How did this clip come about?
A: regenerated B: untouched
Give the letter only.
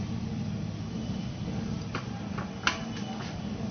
B